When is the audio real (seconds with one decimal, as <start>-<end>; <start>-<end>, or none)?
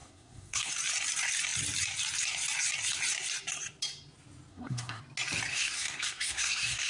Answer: 0.7-4.5; 5.0-5.5